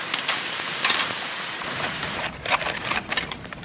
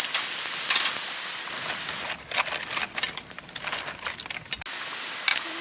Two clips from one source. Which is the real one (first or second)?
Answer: second